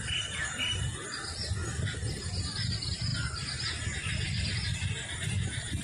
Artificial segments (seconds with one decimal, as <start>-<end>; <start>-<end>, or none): 1.6-2.7